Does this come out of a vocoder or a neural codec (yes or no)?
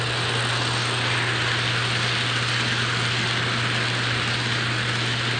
no